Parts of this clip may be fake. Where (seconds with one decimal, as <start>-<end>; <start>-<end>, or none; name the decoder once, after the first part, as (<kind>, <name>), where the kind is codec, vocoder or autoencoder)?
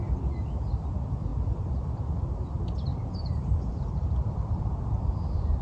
1.3-1.9 (vocoder, BigVGAN v2); 2.9-4.7